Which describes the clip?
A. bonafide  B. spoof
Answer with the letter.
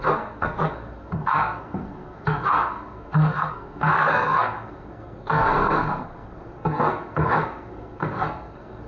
B